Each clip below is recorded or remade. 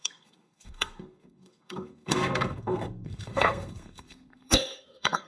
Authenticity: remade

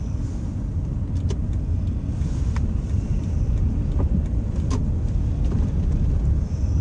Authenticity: recorded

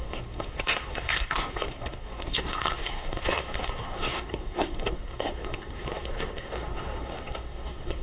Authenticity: remade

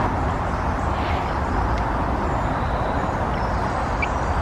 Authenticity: recorded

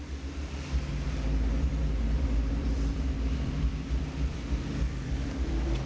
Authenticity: remade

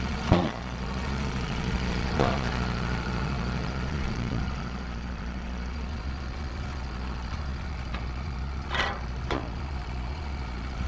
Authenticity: remade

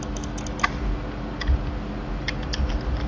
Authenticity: recorded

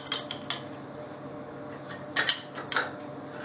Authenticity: recorded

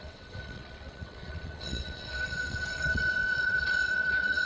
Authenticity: remade